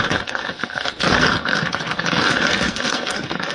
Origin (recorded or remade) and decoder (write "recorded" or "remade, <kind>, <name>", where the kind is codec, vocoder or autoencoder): remade, codec, SNAC